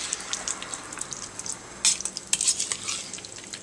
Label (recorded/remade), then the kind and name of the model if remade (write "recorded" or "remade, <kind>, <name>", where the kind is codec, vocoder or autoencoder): recorded